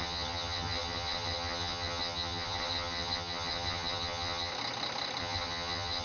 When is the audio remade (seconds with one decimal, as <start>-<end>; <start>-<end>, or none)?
0.0-4.5; 5.2-6.0